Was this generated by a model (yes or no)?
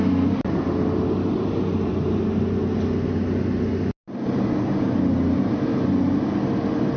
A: no